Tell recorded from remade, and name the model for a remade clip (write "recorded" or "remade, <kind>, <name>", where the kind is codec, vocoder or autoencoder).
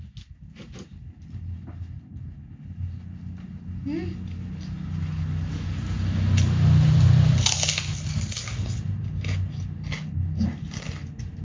recorded